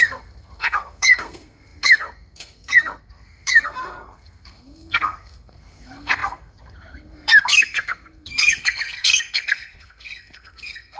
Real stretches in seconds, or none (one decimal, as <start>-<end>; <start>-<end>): none